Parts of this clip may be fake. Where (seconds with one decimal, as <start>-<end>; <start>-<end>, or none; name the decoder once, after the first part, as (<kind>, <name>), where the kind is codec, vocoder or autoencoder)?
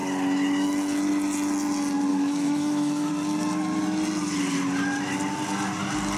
2.1-3.1 (autoencoder, DAC-VAE)